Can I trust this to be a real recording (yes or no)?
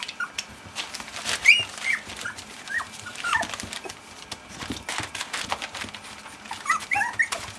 yes